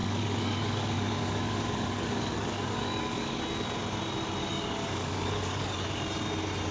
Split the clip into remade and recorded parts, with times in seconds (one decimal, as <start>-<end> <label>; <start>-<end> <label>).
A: 0.0-3.4 remade; 3.4-4.4 recorded; 4.4-6.0 remade; 6.0-6.7 recorded